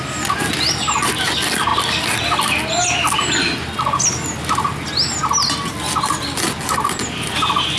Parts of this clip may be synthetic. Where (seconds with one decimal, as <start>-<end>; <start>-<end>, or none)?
none